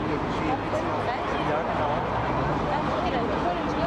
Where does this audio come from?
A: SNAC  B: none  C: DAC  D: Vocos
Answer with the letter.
B